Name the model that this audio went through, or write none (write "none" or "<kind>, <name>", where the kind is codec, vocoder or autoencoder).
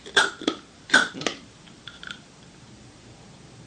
vocoder, BigVGAN v2